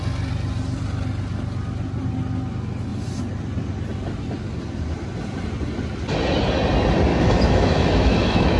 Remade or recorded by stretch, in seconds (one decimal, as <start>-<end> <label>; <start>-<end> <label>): 0.0-7.1 recorded; 7.1-8.6 remade